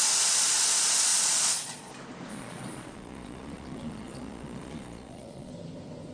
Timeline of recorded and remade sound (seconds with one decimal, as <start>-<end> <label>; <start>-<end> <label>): 0.0-1.1 recorded; 1.1-1.9 remade; 1.9-2.3 recorded; 2.3-5.5 remade; 5.5-6.1 recorded